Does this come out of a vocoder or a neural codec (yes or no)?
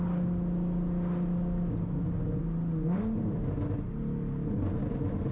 no